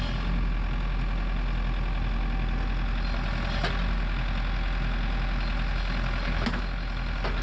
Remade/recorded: recorded